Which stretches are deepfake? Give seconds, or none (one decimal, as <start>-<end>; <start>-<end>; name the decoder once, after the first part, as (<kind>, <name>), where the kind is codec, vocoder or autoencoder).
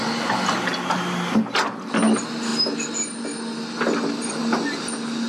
none